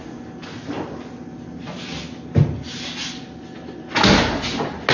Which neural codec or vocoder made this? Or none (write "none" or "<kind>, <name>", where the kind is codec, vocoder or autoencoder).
none